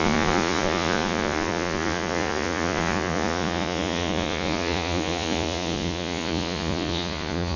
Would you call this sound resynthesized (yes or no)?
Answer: yes